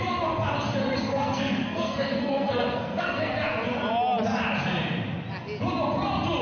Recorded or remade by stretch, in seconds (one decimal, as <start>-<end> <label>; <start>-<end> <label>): 0.0-0.8 recorded; 0.8-3.3 remade; 3.3-6.4 recorded